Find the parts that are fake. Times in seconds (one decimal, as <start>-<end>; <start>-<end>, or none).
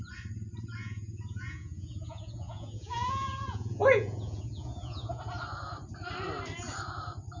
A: 0.8-5.2